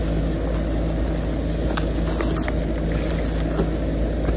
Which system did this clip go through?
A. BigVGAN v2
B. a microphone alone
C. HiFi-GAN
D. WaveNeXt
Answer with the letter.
B